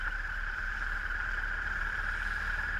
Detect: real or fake real